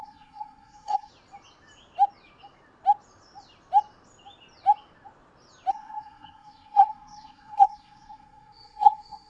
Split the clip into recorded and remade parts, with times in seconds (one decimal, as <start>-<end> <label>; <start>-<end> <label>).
0.0-1.1 remade; 1.1-5.7 recorded; 5.7-9.3 remade